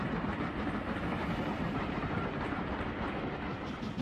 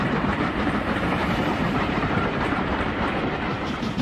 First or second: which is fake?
second